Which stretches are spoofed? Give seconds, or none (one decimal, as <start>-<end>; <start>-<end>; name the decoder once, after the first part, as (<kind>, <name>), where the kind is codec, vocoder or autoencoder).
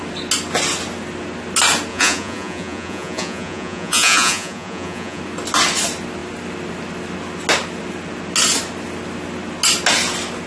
1.9-5.2 (vocoder, Vocos)